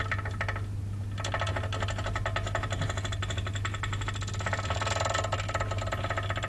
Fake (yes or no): no